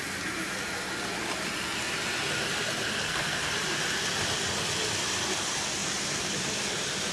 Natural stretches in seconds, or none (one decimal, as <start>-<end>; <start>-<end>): 0.0-2.9; 3.5-7.1